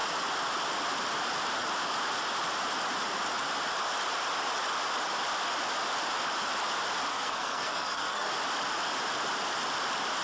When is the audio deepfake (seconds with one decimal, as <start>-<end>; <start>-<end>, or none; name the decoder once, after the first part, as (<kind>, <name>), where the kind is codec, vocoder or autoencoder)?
7.1-8.3 (codec, SNAC)